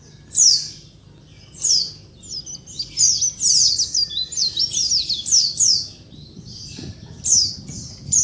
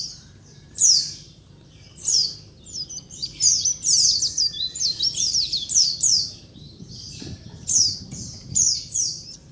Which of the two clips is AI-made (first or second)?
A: second